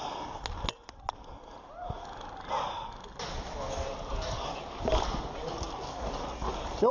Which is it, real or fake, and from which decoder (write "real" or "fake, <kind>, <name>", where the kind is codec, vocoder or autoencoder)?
real